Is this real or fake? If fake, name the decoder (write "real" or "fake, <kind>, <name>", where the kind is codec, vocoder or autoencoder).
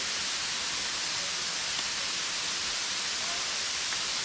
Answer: real